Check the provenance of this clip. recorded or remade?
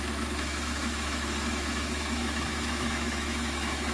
remade